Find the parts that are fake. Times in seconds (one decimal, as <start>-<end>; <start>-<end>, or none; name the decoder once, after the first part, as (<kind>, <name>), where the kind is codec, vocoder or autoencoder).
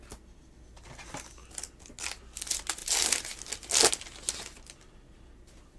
none